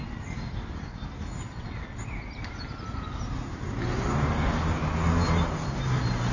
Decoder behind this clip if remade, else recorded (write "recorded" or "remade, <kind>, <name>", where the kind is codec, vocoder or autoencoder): recorded